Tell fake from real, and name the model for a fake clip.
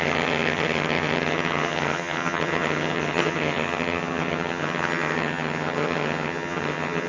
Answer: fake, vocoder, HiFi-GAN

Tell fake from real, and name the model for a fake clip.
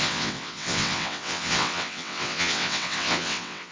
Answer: fake, vocoder, WaveNeXt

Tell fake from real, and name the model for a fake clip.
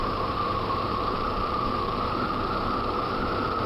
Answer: fake, vocoder, BigVGAN v2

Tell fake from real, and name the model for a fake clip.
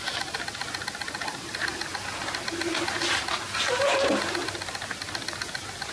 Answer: real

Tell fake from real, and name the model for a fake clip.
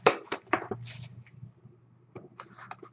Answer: real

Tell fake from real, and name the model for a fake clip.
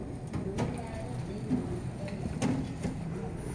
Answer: real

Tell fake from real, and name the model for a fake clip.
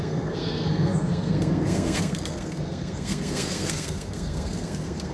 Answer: fake, codec, SNAC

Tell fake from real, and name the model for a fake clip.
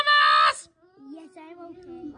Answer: real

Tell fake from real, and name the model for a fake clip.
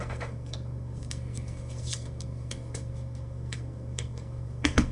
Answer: fake, codec, SNAC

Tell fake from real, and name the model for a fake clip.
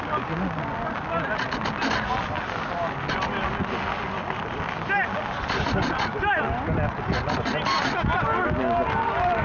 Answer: real